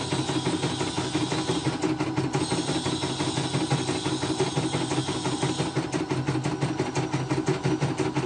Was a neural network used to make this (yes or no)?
no